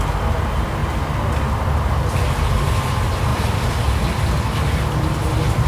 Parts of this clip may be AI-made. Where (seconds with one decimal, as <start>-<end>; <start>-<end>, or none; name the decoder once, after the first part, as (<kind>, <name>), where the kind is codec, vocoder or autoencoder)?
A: 0.8-1.8 (vocoder, BigVGAN v2)